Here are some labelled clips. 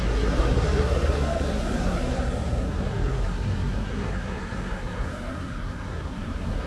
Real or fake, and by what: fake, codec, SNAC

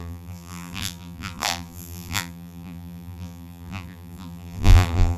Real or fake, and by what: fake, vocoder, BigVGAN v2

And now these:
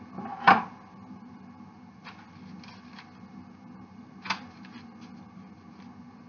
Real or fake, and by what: real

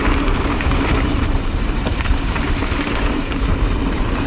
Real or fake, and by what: fake, vocoder, BigVGAN v2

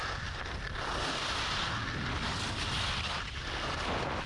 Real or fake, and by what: real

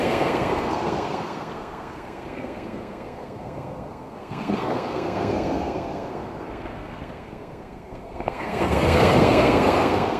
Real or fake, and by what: fake, codec, SNAC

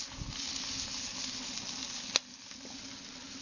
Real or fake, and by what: real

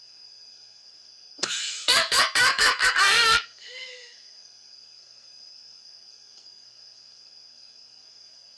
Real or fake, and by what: fake, codec, SNAC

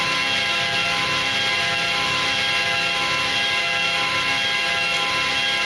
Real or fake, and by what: real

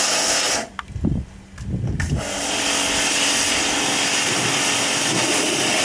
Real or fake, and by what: real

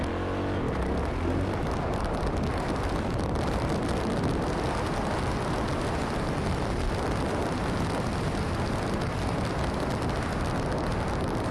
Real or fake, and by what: real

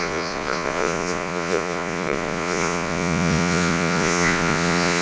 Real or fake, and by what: fake, vocoder, Vocos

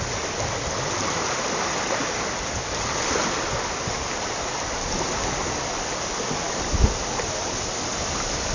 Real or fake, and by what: real